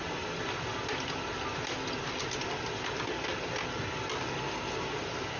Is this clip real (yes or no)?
yes